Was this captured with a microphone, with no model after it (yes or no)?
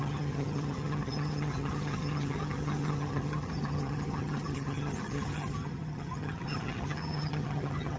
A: no